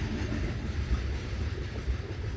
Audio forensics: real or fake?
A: real